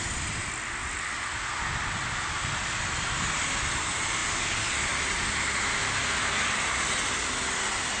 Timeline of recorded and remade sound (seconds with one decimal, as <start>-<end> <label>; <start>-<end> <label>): 0.0-8.0 recorded